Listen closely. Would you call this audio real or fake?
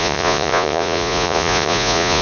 fake